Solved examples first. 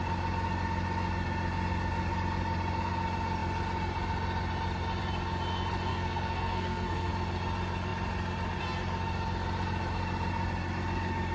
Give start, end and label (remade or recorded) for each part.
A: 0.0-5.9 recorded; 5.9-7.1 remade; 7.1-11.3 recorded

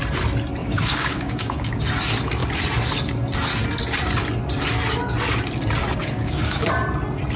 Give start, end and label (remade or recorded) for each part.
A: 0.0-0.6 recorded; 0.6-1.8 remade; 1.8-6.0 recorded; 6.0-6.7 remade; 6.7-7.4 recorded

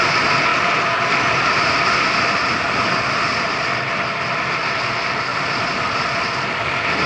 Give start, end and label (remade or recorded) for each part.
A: 0.0-7.1 recorded

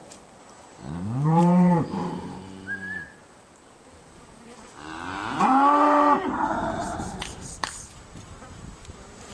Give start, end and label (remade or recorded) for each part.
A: 0.0-9.3 remade